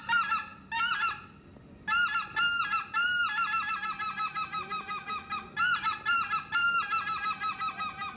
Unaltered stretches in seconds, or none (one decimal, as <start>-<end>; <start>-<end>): 0.0-8.2